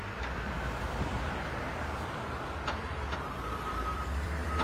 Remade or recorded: remade